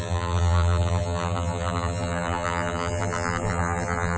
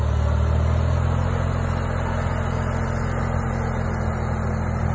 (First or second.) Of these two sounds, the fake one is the first